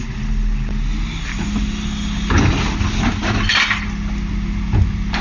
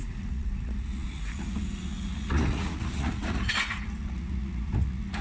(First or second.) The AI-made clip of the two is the second